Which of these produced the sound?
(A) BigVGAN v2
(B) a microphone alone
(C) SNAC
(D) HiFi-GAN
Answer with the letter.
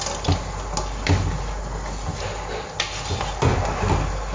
B